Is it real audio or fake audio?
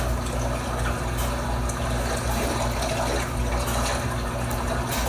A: real